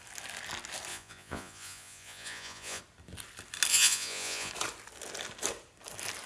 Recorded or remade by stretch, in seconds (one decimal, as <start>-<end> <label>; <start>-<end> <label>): 0.0-0.9 recorded; 0.9-2.8 remade; 2.8-3.7 recorded; 3.7-4.5 remade; 4.5-6.3 recorded